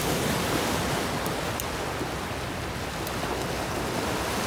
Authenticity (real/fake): real